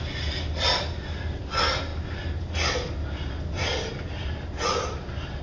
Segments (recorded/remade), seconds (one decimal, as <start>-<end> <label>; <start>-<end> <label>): 0.0-5.4 recorded